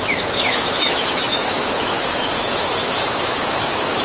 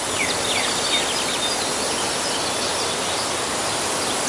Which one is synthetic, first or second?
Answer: first